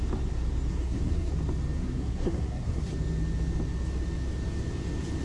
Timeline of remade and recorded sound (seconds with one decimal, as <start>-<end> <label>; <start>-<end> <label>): 0.0-0.7 recorded; 0.7-1.3 remade; 1.3-1.8 recorded; 1.8-2.9 remade; 2.9-5.2 recorded